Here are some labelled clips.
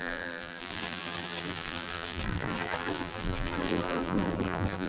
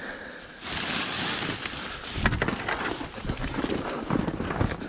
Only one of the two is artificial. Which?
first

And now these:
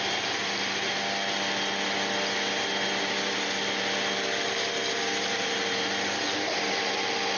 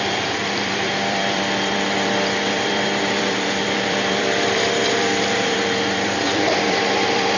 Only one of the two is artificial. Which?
second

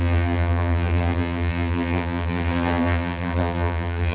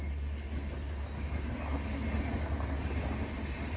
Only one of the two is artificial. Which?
first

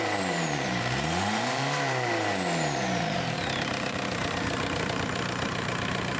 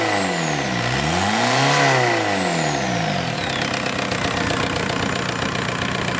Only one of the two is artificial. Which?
first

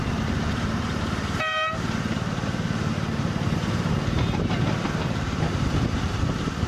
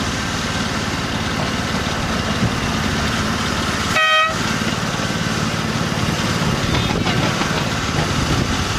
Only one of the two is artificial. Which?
first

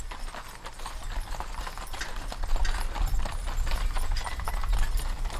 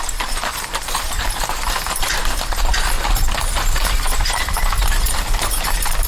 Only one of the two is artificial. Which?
second